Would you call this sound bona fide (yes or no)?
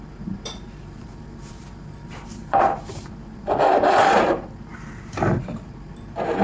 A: no